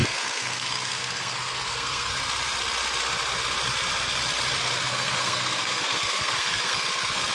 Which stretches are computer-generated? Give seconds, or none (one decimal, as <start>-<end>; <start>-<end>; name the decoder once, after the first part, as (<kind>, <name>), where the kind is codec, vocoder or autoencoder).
0.0-2.1 (codec, SNAC); 4.9-7.3